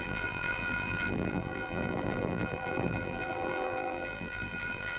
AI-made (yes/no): yes